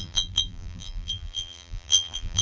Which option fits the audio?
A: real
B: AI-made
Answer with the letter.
B